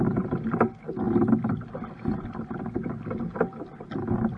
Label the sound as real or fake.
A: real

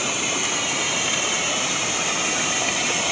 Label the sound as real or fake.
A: fake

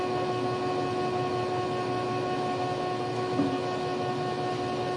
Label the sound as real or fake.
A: real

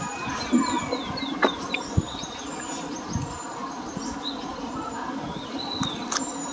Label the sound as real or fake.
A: real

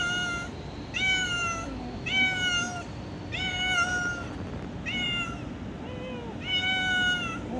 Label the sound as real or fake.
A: real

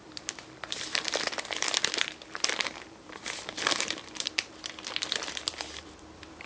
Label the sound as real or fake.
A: fake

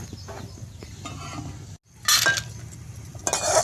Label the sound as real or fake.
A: real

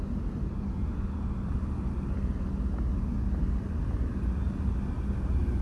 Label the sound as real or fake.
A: real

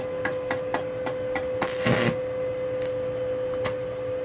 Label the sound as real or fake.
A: real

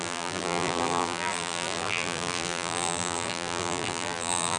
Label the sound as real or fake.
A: fake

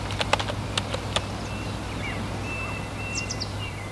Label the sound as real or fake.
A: real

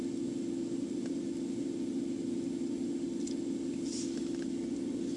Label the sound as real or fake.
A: real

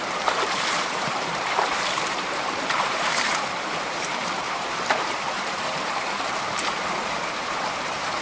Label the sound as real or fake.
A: fake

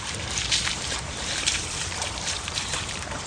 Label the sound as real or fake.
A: fake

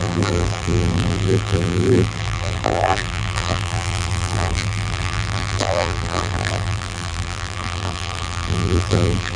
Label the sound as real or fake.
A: fake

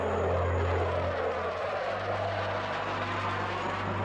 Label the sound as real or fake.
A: real